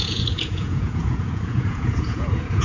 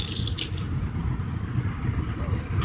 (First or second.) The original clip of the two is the second